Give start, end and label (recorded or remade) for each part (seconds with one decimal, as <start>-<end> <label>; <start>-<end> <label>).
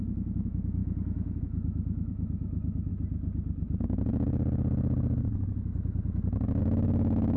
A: 0.0-2.9 remade; 2.9-6.6 recorded; 6.6-7.4 remade